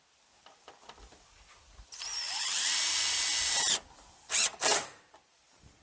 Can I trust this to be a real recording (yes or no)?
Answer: yes